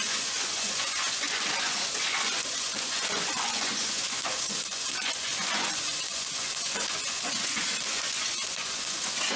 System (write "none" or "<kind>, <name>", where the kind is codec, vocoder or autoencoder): vocoder, Vocos